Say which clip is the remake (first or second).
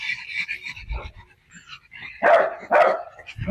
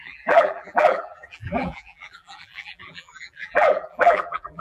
second